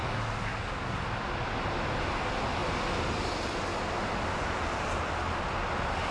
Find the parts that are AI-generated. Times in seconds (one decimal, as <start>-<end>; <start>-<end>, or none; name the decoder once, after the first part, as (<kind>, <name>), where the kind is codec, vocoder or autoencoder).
0.0-1.0 (codec, DAC)